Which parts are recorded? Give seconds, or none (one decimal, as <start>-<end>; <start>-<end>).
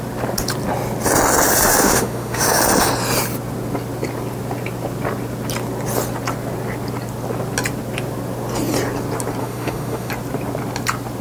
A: 0.0-1.8; 2.6-9.4; 10.1-11.2